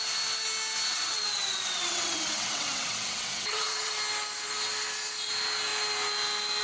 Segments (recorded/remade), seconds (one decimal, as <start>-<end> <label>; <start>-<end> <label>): 0.0-0.9 recorded; 0.9-3.9 remade; 3.9-6.6 recorded